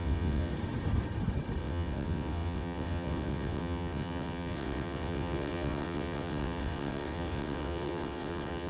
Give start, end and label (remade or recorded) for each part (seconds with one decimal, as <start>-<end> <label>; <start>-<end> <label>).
0.0-0.5 remade; 0.5-1.6 recorded; 1.6-8.7 remade